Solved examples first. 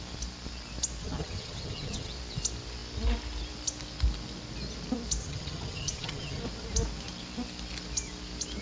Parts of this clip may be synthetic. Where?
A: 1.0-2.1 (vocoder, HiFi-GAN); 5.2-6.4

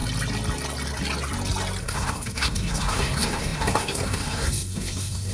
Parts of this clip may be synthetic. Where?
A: 1.8-5.3 (codec, SNAC)

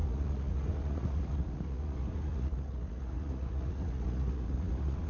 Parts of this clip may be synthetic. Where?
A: 0.0-5.1 (vocoder, Vocos)

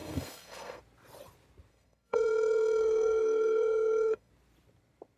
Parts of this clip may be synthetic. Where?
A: 0.0-0.8 (codec, SNAC); 1.7-4.3

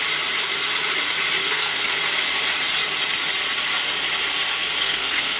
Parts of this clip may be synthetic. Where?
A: 1.4-1.9 (codec, SNAC); 4.8-5.4

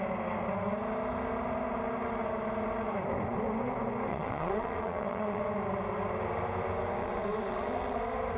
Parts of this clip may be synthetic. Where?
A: 4.1-5.4 (vocoder, WaveNeXt); 7.0-8.0

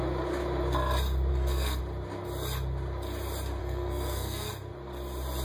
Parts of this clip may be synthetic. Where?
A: 1.3-1.8 (codec, SNAC); 3.6-4.5

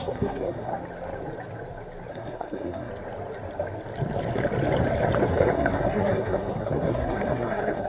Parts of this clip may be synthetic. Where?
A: 0.0-0.7 (codec, SNAC); 2.1-2.9; 5.3-7.9